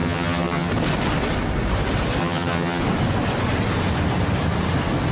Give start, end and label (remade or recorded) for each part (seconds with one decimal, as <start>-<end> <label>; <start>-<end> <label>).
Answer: 0.0-0.7 remade; 0.7-2.2 recorded; 2.2-2.8 remade; 2.8-5.1 recorded